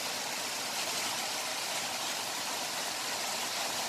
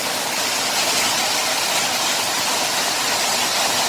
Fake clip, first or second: first